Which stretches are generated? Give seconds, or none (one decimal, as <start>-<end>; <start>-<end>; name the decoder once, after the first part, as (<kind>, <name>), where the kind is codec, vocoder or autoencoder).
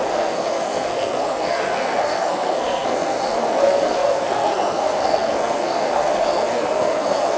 0.0-7.4 (codec, SNAC)